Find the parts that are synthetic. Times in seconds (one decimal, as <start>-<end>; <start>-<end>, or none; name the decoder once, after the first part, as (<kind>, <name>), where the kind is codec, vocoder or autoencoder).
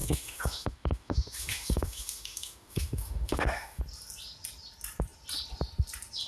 0.0-3.8 (autoencoder, DAC-VAE)